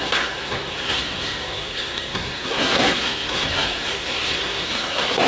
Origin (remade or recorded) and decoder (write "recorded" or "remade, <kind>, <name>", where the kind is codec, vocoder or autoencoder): remade, codec, SNAC